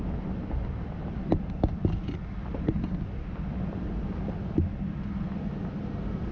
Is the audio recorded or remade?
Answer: recorded